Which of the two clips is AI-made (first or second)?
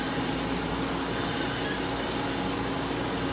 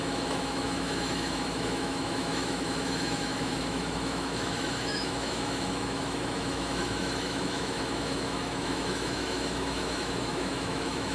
second